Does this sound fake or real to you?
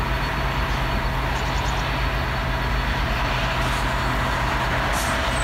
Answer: real